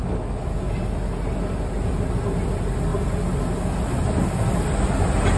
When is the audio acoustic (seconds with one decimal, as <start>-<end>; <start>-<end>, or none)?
0.0-5.4